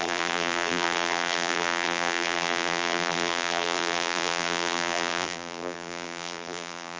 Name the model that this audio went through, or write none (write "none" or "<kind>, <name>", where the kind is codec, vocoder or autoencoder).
vocoder, BigVGAN v2